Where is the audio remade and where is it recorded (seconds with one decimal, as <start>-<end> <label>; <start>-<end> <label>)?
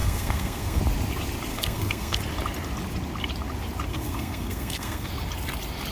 0.0-0.8 remade; 0.8-1.5 recorded; 1.5-2.2 remade; 2.2-3.9 recorded; 3.9-5.1 remade; 5.1-5.9 recorded